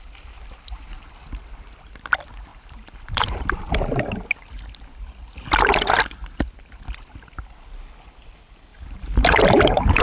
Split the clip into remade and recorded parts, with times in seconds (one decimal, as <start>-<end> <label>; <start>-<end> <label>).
0.0-2.5 recorded; 2.5-3.5 remade; 3.5-8.7 recorded; 8.7-10.0 remade